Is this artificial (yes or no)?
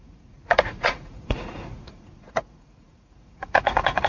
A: yes